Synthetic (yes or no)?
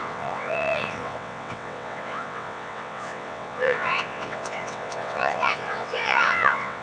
yes